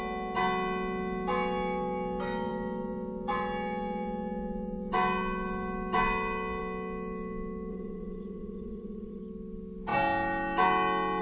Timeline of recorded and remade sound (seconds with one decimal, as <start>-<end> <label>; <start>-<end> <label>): 0.0-7.7 recorded; 7.7-9.2 remade; 9.2-11.2 recorded